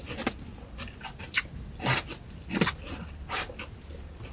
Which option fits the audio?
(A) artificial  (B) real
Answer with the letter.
B